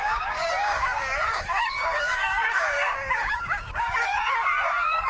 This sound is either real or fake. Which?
fake